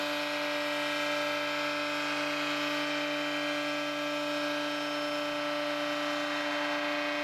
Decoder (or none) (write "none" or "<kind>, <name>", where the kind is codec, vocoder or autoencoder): none